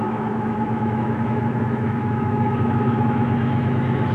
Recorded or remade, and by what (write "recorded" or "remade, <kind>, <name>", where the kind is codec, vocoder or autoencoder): remade, autoencoder, DAC-VAE